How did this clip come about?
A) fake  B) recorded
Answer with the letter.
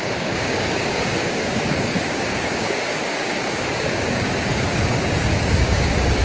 A